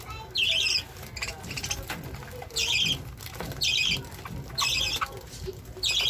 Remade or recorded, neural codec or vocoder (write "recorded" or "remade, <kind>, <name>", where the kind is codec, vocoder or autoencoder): recorded